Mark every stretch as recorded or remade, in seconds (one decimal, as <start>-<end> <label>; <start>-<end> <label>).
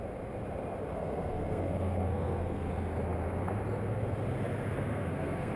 0.0-0.9 recorded; 0.9-2.7 remade; 2.7-4.9 recorded; 4.9-5.6 remade